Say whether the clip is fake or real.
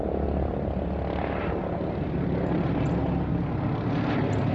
real